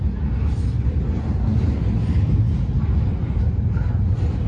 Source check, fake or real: real